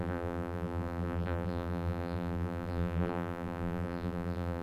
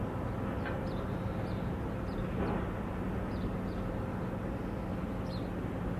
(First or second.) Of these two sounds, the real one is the second